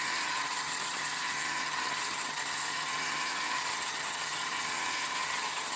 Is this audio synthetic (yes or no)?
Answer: yes